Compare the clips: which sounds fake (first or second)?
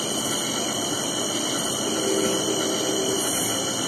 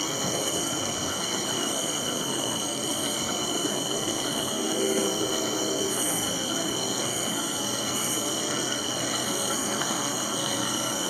second